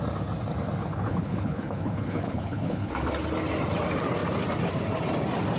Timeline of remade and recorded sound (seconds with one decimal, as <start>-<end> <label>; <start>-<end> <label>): 0.0-0.8 recorded; 0.8-2.9 remade; 2.9-5.6 recorded